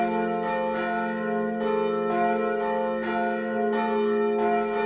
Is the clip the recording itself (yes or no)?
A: yes